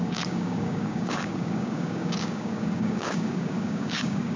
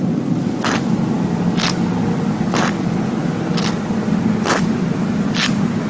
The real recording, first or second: second